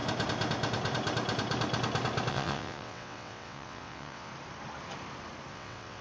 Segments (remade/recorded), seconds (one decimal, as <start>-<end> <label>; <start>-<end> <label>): 0.0-2.3 recorded; 2.3-4.3 remade; 4.3-5.5 recorded; 5.5-6.0 remade